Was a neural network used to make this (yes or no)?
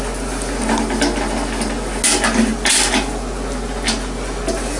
no